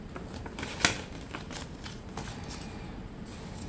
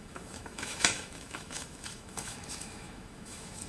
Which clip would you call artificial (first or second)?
second